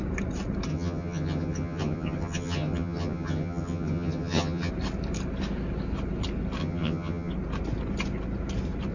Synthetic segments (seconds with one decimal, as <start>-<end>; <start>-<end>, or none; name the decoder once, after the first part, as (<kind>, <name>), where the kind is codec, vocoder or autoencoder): 0.7-4.7 (vocoder, HiFi-GAN); 6.6-7.3